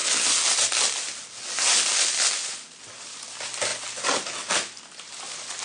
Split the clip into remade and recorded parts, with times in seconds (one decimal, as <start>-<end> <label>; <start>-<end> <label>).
0.0-5.6 recorded